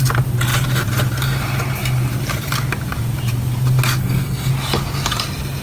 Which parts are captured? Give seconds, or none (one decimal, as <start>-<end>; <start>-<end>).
0.0-4.0; 4.5-5.6